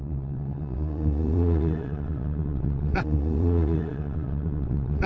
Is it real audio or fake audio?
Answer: fake